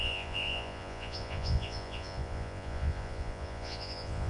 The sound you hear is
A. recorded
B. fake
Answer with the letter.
B